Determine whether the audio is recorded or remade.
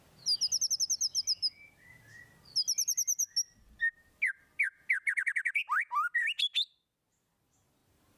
recorded